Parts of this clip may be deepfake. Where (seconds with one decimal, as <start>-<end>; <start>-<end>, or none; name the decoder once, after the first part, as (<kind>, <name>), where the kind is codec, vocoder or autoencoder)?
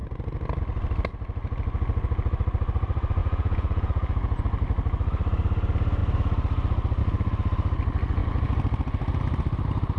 3.2-4.4 (vocoder, Vocos)